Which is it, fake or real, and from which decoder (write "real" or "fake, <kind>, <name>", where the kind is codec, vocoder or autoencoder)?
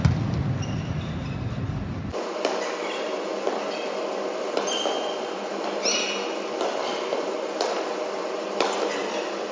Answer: real